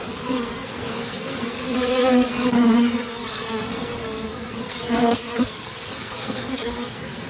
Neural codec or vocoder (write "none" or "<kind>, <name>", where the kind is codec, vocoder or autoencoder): codec, SNAC